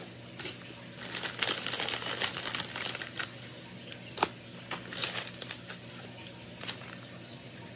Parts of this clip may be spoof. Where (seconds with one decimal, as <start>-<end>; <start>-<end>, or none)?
none